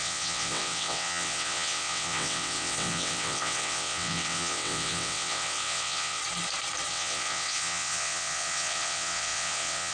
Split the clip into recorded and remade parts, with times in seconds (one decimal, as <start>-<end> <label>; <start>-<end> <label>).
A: 0.0-6.2 remade; 6.2-6.9 recorded; 6.9-9.9 remade